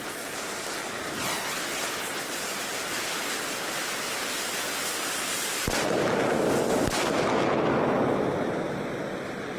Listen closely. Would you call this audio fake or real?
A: real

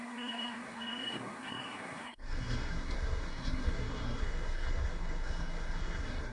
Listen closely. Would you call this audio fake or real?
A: fake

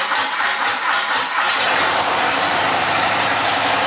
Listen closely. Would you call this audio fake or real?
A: fake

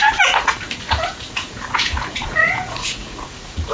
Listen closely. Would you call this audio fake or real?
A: fake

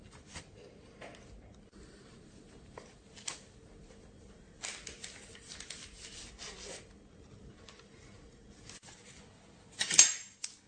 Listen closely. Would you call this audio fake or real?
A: real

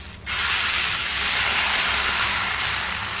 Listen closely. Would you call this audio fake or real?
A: real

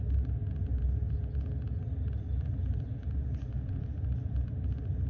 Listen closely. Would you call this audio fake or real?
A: real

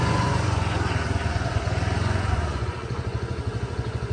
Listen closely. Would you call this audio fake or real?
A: fake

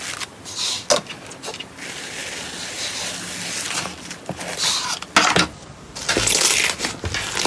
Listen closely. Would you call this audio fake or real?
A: real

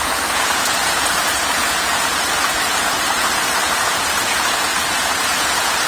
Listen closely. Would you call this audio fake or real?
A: fake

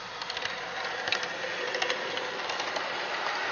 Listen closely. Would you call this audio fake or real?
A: real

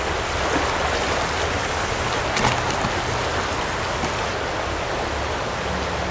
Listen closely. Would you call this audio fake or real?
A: real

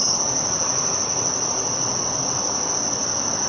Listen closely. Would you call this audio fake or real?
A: real